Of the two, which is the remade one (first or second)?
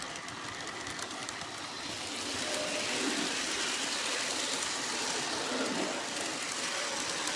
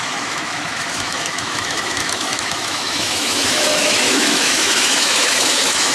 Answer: second